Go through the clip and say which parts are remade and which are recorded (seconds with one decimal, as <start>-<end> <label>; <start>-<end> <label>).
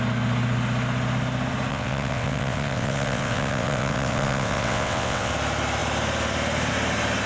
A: 0.0-1.7 recorded; 1.7-5.3 remade; 5.3-7.3 recorded